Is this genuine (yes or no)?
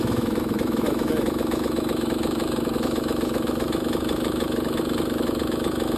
no